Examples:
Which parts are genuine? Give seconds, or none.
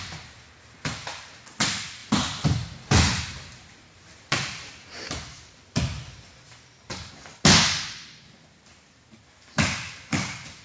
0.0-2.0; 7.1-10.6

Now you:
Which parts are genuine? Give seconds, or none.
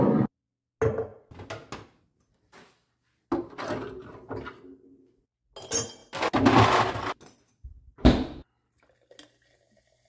0.0-10.1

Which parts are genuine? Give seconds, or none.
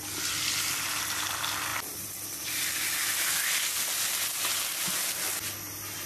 0.0-6.1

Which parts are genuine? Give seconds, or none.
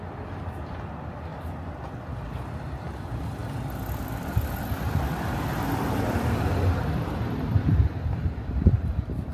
3.4-4.0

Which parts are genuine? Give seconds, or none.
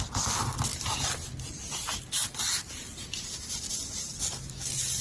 0.0-5.0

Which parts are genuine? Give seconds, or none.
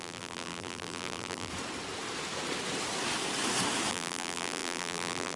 1.5-3.9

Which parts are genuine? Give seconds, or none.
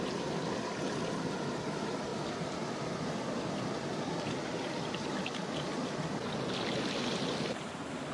0.0-8.1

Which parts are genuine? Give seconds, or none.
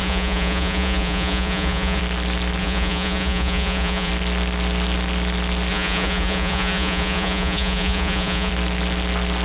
2.0-2.6; 4.1-5.7; 8.5-9.4